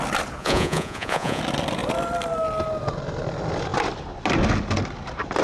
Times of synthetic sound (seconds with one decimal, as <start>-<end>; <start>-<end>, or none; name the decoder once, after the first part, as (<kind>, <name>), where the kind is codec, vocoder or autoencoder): 0.4-1.4 (vocoder, Vocos)